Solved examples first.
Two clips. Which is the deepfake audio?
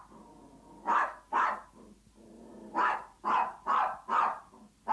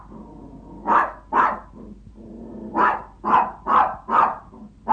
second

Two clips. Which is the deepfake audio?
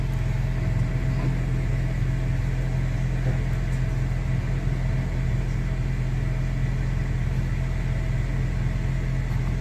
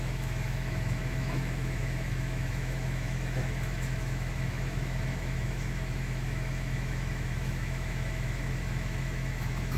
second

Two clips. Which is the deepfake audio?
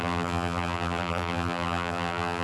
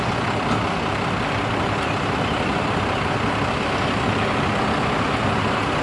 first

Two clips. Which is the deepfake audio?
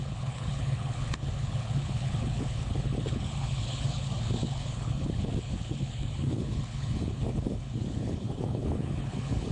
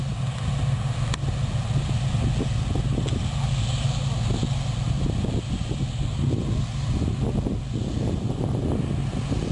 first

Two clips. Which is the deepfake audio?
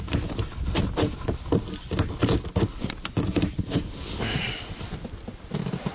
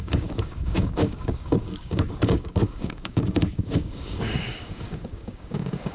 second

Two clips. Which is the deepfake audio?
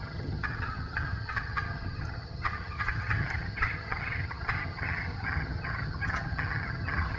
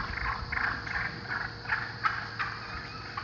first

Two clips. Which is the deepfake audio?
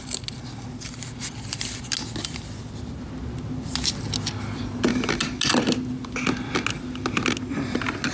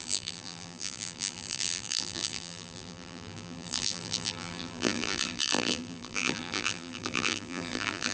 second